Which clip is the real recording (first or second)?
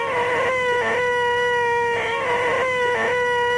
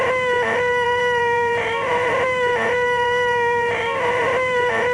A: first